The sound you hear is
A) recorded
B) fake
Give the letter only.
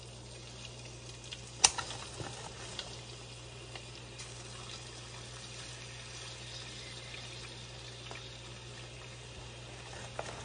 A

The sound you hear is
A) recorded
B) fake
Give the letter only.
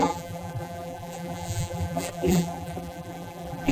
B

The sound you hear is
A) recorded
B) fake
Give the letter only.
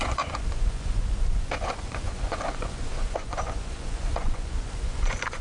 B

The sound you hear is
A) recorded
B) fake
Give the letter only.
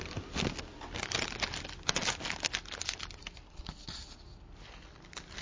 A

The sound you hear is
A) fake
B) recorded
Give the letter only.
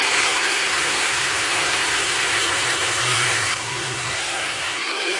A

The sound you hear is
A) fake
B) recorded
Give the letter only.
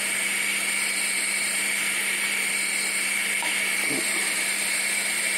B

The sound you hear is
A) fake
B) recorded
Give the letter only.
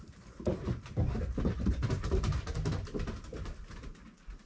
B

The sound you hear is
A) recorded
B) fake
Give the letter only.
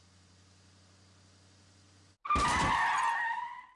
A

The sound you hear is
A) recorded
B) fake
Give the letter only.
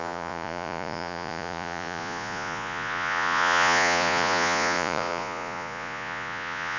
B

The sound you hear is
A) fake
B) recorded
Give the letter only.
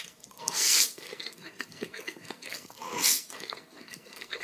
A